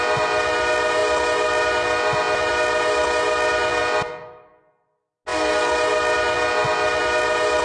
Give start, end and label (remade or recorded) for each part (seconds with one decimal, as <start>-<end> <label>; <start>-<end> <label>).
0.0-7.6 recorded